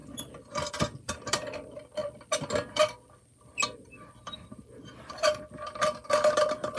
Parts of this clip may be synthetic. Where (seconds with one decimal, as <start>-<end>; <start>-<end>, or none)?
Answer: none